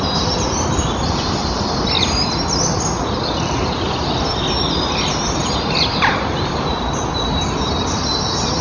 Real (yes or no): yes